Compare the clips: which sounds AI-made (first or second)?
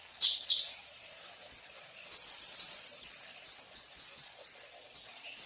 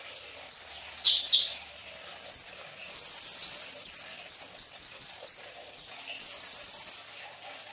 first